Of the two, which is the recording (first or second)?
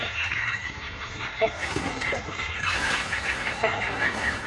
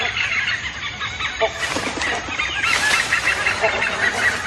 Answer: second